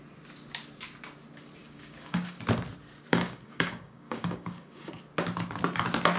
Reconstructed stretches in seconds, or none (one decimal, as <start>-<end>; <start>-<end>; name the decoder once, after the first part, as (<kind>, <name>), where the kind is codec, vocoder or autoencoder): 1.6-2.4 (codec, DAC); 3.1-4.9